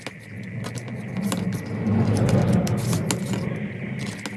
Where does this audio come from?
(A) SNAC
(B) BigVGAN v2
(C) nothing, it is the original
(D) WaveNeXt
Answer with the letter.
C